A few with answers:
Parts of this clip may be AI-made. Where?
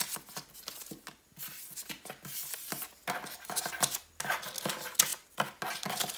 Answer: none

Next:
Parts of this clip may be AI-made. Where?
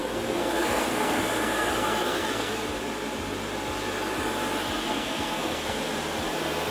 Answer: 0.0-2.5 (codec, SNAC); 4.9-5.8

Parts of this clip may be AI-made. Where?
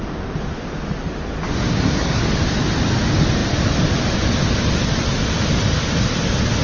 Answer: 1.6-2.2 (codec, SNAC)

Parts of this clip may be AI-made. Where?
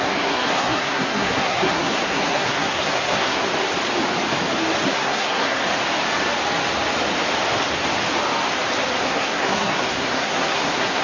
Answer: 0.0-3.4 (codec, SNAC); 4.9-5.6; 9.0-11.0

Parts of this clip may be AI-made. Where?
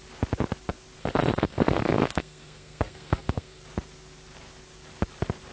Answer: 1.0-3.6 (codec, SNAC)